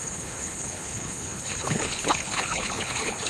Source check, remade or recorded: remade